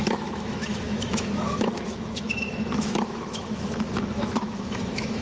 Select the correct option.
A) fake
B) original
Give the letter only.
A